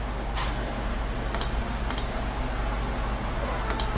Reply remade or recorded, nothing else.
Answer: recorded